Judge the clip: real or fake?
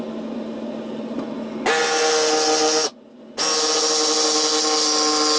real